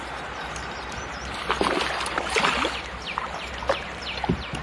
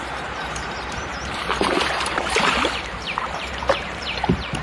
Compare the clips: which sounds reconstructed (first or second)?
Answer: second